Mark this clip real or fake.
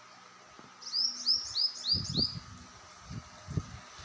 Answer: real